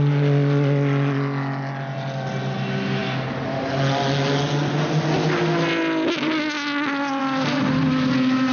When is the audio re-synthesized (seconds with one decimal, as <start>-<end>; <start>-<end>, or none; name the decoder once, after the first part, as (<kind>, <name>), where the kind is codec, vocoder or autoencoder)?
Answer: none